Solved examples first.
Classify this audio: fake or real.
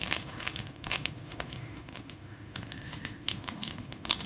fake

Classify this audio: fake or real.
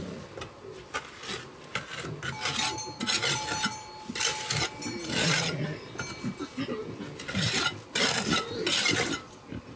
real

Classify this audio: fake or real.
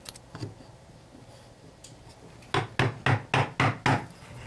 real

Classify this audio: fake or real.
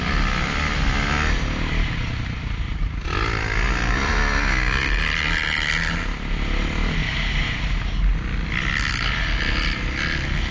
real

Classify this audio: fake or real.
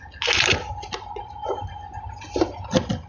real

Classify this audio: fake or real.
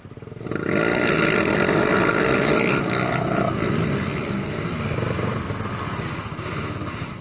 real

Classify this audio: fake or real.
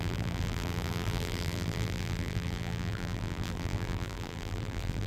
fake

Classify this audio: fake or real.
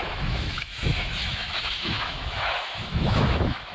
fake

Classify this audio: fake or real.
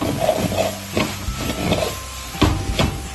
real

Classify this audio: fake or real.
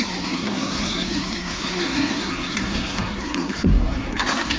fake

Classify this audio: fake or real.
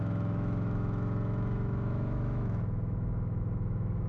fake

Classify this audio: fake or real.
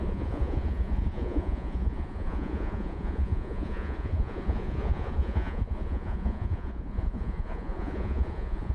fake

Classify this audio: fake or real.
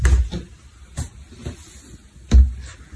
real